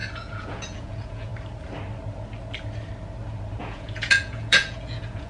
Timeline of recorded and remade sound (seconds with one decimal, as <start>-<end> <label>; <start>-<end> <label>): 0.0-1.3 remade; 1.3-3.6 recorded; 3.6-5.3 remade